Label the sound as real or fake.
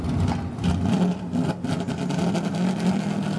real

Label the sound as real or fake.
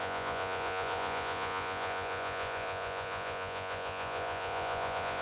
fake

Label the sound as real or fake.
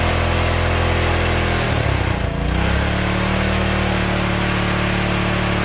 real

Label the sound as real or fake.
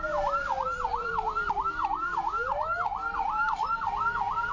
fake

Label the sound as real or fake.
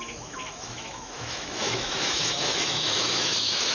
fake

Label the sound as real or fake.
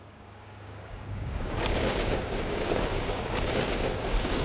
fake